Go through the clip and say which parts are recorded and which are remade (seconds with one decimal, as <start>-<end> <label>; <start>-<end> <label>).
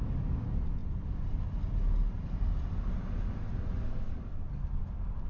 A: 0.0-5.3 recorded